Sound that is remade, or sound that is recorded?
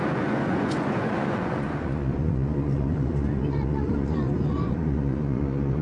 remade